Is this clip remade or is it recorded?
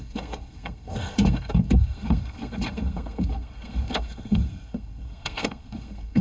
remade